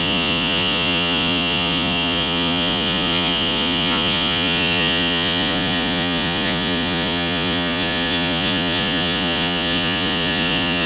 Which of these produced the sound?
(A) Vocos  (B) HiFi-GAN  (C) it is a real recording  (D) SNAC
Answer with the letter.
A